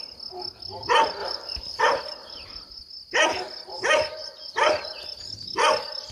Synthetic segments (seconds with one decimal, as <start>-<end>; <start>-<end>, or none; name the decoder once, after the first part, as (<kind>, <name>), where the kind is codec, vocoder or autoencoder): 1.2-1.8 (vocoder, BigVGAN v2); 2.2-2.8; 4.2-5.3